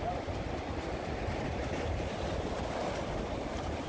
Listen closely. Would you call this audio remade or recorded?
recorded